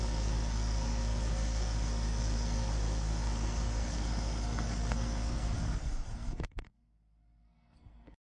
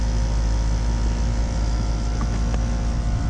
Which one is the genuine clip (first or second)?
second